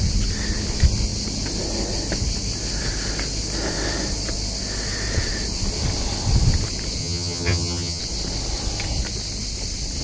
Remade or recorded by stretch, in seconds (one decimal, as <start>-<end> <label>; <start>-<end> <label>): 0.0-7.0 recorded; 7.0-8.0 remade; 8.0-10.0 recorded